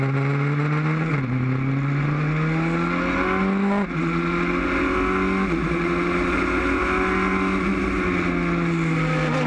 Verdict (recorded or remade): recorded